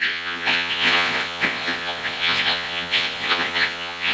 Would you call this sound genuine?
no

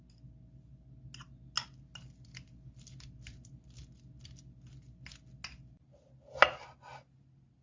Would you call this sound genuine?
yes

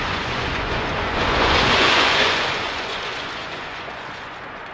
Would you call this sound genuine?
no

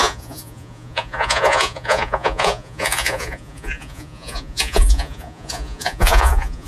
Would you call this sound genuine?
no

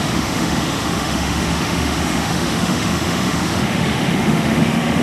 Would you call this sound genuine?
no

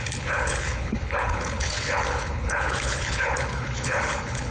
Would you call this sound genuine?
no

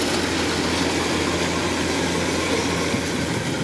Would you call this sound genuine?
yes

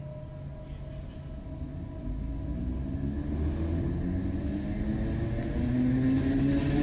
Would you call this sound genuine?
yes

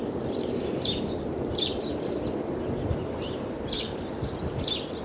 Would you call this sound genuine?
yes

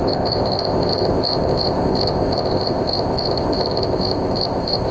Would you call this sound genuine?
no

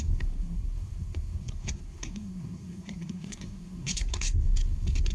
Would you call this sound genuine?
no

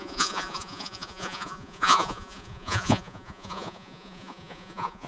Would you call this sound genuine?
no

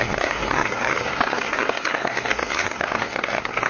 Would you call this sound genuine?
no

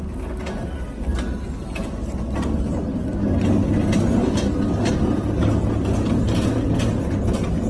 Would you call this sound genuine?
yes